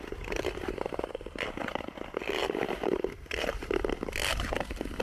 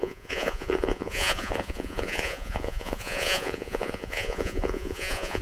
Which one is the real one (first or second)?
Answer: first